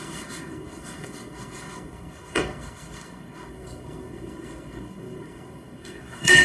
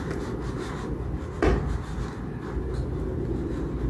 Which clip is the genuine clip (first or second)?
second